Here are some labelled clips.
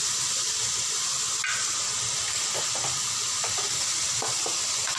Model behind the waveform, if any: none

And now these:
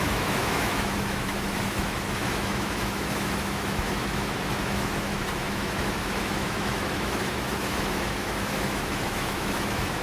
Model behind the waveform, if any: autoencoder, DAC-VAE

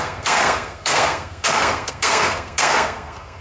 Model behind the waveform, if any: codec, SNAC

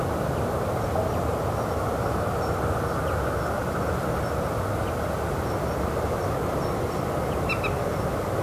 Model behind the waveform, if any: none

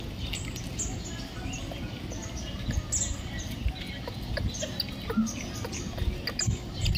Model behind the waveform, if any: none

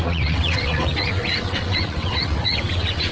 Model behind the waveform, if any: vocoder, WaveNeXt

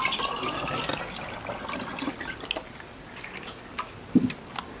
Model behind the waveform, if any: none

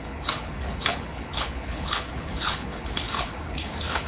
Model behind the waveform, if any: codec, HILCodec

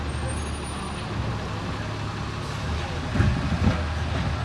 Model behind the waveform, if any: none